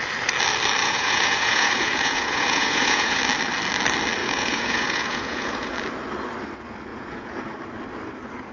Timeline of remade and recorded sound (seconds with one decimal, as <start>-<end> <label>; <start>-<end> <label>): 0.0-0.8 recorded; 0.8-3.2 remade; 3.2-4.2 recorded; 4.2-5.7 remade; 5.7-6.9 recorded; 6.9-7.4 remade; 7.4-8.5 recorded